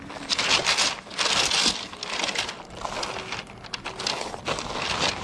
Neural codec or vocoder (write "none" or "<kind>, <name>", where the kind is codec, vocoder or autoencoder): none